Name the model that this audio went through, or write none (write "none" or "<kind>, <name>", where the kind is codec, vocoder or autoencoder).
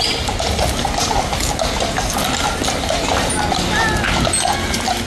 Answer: none